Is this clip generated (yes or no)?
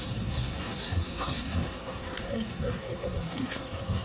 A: yes